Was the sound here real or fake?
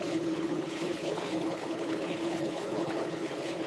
fake